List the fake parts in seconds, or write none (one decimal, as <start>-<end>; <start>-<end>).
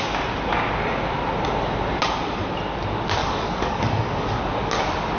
3.2-4.4